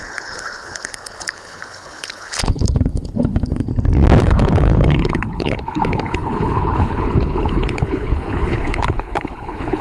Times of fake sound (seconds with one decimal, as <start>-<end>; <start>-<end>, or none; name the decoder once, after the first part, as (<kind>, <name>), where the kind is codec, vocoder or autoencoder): 0.0-3.7 (codec, HILCodec); 4.2-9.8